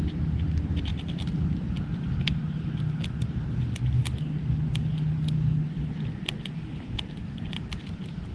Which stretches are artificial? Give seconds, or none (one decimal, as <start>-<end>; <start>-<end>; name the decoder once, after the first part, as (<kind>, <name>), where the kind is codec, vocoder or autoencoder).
none